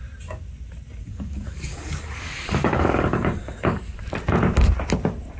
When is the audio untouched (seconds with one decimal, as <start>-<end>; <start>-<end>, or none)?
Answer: 0.0-1.0; 4.0-5.4